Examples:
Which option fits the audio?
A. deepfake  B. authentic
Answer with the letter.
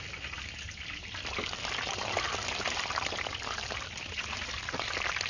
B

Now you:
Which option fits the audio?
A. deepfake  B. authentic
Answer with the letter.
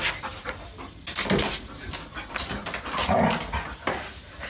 B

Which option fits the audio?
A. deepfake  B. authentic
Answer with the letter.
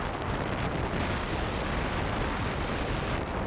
B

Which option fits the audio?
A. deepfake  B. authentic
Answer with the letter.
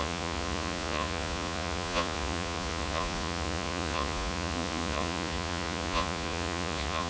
A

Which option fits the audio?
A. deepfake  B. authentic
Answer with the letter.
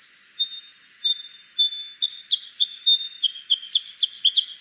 B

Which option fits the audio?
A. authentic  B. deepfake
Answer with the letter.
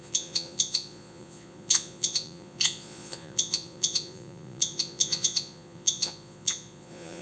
B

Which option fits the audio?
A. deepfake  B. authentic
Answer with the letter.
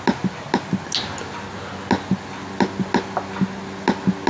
B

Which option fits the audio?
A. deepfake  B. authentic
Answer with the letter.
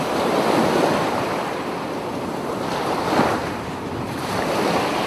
A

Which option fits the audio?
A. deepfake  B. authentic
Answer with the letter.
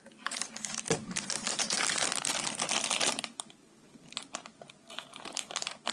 B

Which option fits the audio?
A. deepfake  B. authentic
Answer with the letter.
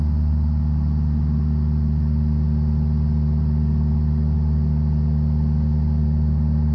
B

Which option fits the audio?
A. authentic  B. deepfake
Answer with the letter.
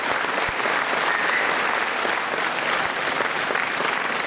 A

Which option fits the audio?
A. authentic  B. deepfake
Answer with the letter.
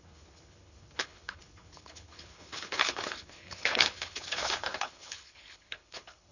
B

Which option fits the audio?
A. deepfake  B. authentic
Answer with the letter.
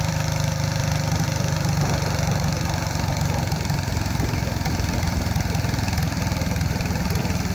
A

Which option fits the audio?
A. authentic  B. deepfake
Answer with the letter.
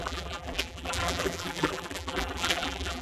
B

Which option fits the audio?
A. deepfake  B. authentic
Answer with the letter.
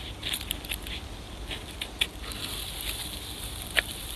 B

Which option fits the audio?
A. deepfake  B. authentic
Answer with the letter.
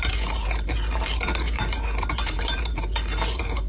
A